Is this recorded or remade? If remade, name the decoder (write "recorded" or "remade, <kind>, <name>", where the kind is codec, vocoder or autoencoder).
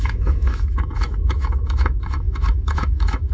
remade, autoencoder, DAC-VAE